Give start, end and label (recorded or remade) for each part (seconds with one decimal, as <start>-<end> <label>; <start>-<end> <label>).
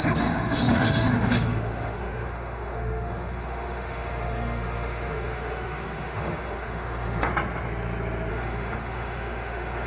0.0-7.3 remade; 7.3-8.3 recorded; 8.3-9.9 remade